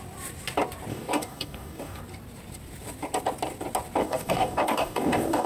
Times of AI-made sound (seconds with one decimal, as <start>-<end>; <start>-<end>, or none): 0.9-2.0; 4.0-5.5